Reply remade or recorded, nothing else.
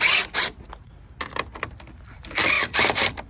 recorded